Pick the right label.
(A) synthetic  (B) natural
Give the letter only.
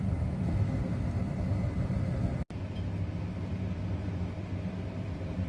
B